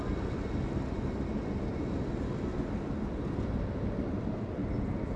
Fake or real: real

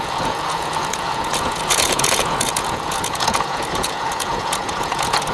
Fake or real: fake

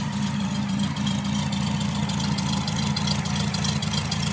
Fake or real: real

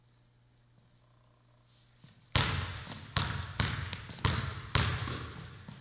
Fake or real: real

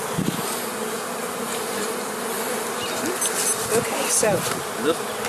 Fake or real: real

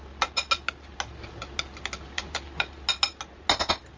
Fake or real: real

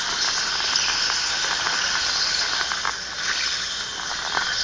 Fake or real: real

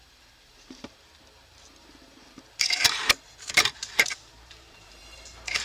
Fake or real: fake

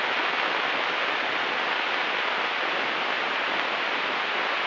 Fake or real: real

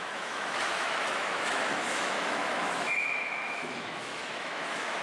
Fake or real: fake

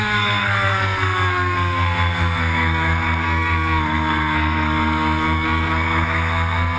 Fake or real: fake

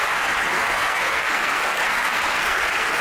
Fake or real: fake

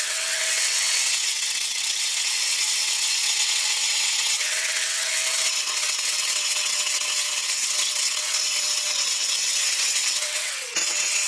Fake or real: fake